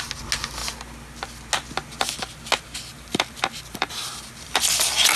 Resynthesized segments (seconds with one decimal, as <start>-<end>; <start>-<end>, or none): 2.9-5.2